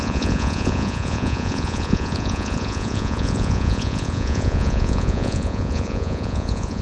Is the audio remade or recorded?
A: remade